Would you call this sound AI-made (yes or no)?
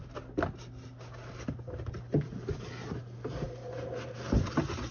no